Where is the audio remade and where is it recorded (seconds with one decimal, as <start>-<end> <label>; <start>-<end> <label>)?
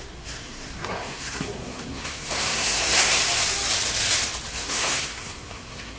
0.0-3.2 remade; 3.2-4.5 recorded; 4.5-6.0 remade